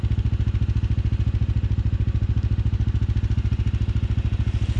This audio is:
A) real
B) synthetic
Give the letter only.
A